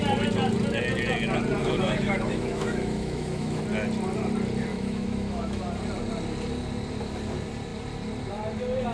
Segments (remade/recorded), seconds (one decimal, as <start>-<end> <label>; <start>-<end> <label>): 0.0-1.6 recorded; 1.6-3.6 remade; 3.6-4.7 recorded; 4.7-5.6 remade; 5.6-8.9 recorded